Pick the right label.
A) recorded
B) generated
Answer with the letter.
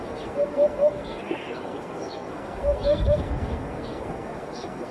B